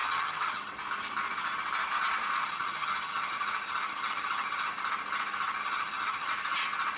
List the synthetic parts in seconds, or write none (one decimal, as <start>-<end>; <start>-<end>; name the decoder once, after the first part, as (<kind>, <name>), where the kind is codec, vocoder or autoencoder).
0.0-0.7 (vocoder, HiFi-GAN); 2.4-4.7; 5.6-6.3